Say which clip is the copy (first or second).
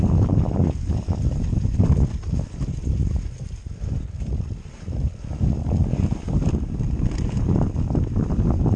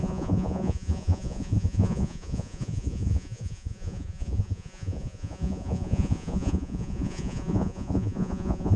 second